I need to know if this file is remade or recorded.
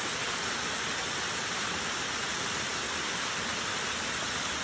recorded